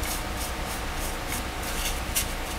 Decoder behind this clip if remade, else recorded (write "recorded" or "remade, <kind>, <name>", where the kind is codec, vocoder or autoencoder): recorded